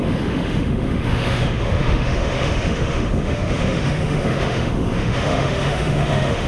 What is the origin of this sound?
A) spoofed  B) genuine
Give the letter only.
A